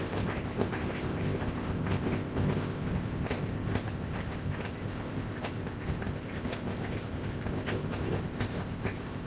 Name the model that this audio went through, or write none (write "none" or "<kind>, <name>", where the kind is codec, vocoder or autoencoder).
codec, ZipCodec